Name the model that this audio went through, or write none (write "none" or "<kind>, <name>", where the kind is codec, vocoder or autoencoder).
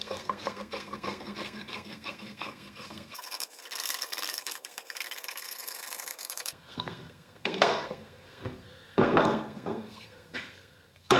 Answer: codec, SNAC